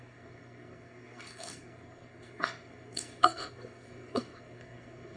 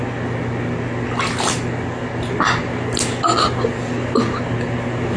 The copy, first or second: first